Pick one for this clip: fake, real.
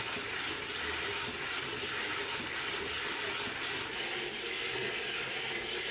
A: real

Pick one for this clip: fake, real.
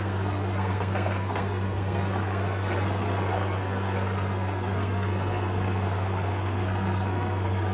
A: fake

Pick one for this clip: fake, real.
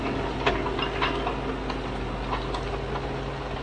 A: real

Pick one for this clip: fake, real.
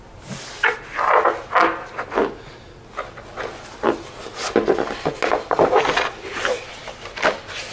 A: real